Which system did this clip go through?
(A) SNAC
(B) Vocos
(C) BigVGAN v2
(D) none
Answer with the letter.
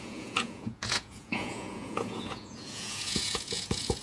B